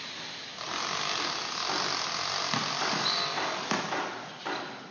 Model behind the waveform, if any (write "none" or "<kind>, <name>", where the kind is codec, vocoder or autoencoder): none